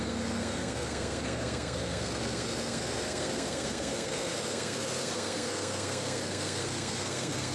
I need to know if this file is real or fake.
fake